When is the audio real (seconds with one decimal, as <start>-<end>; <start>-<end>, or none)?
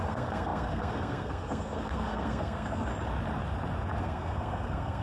2.9-4.0